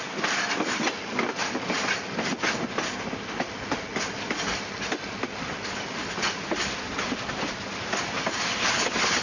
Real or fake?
real